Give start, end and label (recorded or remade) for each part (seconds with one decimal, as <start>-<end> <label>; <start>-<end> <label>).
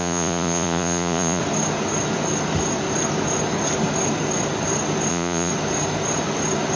0.0-1.4 remade; 1.4-5.1 recorded; 5.1-5.5 remade; 5.5-6.8 recorded